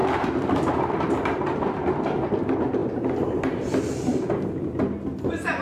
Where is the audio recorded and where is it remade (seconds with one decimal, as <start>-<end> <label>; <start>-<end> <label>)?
0.0-5.6 recorded